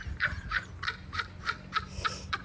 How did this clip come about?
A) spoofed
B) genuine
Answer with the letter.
B